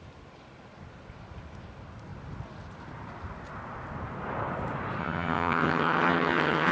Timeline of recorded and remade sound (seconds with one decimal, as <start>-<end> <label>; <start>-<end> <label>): 0.0-5.0 recorded; 5.0-6.7 remade